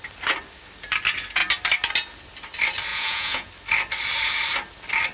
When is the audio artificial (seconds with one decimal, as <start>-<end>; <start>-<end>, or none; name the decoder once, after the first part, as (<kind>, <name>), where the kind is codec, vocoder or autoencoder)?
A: 2.9-3.5 (vocoder, Vocos)